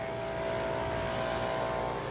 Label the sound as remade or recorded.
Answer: recorded